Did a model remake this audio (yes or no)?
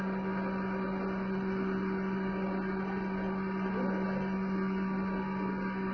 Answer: no